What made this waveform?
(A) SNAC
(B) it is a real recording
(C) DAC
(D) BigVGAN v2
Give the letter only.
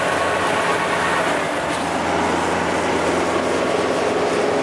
B